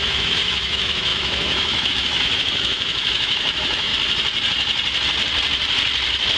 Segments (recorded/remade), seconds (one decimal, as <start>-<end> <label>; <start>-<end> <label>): 0.0-3.9 remade; 3.9-6.4 recorded